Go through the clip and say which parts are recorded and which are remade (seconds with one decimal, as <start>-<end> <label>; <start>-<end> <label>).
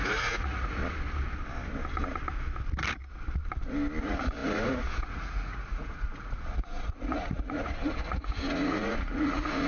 0.0-0.8 remade; 0.8-4.0 recorded; 4.0-9.7 remade